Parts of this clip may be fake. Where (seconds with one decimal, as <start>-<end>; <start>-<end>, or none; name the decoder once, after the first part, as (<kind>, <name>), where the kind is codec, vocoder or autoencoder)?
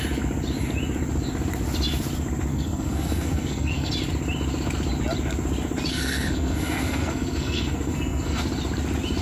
2.5-3.9 (codec, SNAC); 5.9-8.4